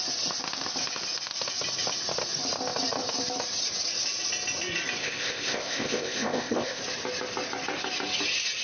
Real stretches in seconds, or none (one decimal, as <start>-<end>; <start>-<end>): 0.0-5.0; 6.8-8.6